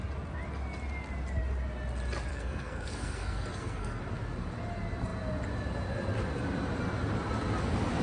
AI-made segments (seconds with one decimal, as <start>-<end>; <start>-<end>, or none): 2.3-4.0